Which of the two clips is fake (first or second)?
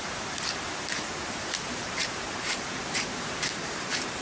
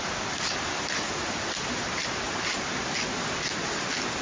first